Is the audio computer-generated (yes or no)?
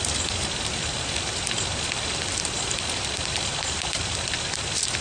no